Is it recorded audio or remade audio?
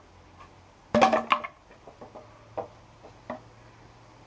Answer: recorded